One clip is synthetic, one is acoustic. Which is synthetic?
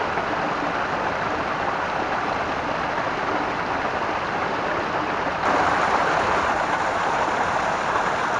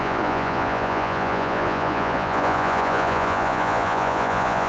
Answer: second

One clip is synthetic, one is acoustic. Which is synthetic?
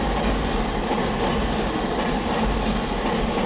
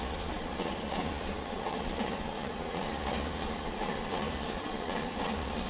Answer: second